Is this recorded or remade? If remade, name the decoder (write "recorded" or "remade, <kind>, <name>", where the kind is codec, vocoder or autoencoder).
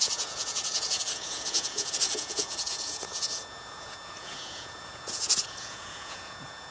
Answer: remade, vocoder, Vocos